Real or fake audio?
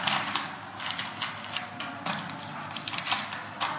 real